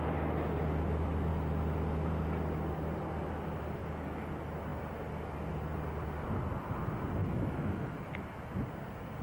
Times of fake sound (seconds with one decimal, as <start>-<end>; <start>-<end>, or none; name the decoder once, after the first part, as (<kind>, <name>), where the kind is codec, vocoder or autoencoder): 3.8-4.3 (autoencoder, DAC-VAE); 7.2-8.2